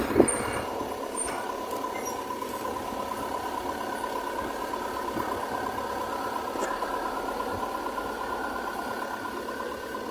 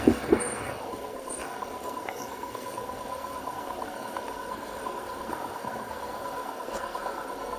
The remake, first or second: second